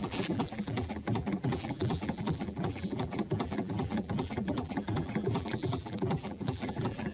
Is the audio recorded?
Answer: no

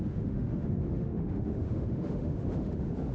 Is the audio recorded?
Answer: no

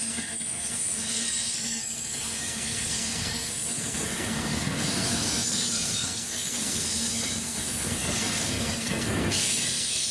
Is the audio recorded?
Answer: no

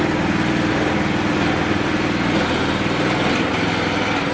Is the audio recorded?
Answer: yes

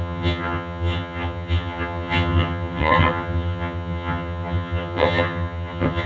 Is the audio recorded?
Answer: no